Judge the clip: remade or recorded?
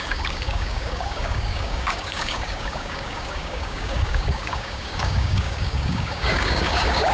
remade